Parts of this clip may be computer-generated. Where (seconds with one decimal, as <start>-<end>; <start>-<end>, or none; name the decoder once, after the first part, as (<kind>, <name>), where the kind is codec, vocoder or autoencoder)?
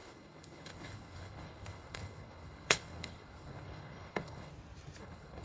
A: 0.0-4.5 (codec, HILCodec); 5.0-5.4